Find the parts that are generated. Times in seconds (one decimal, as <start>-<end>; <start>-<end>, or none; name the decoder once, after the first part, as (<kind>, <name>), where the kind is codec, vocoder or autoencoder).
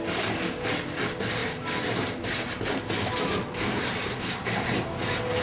none